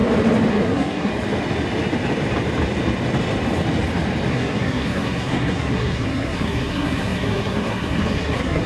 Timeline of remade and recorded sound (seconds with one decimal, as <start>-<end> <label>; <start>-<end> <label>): 0.0-0.5 recorded; 0.5-1.1 remade; 1.1-4.3 recorded; 4.3-8.7 remade